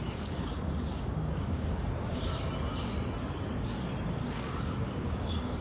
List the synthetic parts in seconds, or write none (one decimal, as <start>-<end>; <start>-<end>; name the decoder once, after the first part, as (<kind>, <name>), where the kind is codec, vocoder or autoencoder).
0.0-2.3 (codec, DAC); 4.3-5.6